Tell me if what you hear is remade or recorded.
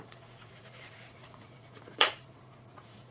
remade